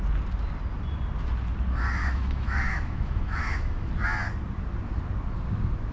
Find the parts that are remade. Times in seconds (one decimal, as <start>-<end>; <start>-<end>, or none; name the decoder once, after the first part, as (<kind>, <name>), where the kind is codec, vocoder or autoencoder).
2.0-3.9 (autoencoder, DAC-VAE)